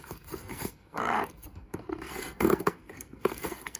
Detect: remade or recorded remade